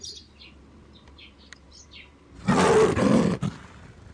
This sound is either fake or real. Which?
real